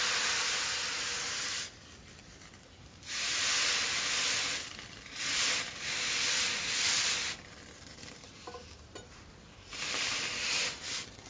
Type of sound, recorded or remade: remade